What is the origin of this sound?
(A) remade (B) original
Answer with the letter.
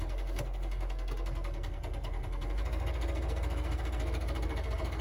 A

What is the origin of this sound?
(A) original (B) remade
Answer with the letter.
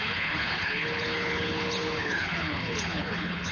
B